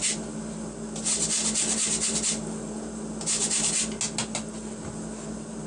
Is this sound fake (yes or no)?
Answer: no